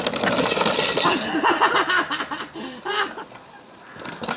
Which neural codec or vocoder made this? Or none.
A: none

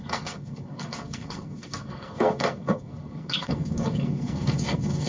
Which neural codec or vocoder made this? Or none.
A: codec, SNAC